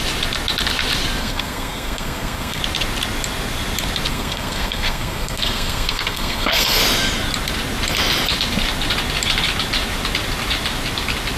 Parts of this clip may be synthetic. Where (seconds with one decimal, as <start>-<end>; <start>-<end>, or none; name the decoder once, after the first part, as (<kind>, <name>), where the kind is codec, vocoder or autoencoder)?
1.2-2.6 (codec, SNAC); 4.1-6.8